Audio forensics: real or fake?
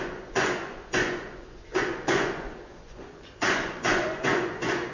fake